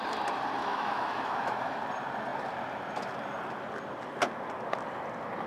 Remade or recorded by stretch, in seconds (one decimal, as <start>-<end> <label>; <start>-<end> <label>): 0.0-0.6 recorded; 0.6-1.8 remade; 1.8-5.5 recorded